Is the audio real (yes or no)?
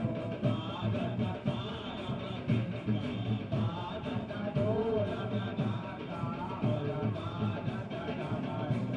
no